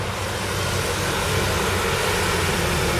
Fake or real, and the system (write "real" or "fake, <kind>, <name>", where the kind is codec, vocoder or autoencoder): real